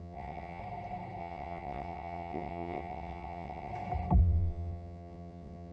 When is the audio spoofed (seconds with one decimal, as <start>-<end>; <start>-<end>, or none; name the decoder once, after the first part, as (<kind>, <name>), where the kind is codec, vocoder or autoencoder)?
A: 0.0-0.6 (vocoder, WaveNeXt); 1.2-3.7; 4.2-5.7